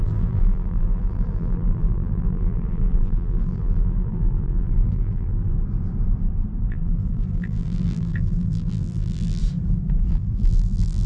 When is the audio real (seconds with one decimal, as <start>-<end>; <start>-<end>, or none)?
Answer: 5.5-6.6; 9.4-10.1